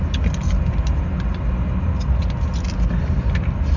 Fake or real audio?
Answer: real